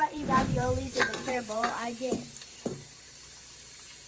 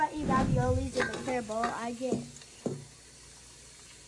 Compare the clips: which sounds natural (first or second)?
second